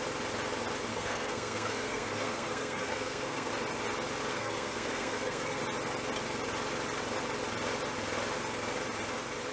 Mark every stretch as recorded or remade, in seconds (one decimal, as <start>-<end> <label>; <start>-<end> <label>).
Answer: 0.0-0.9 recorded; 0.9-3.5 remade; 3.5-4.3 recorded; 4.3-5.6 remade; 5.6-9.5 recorded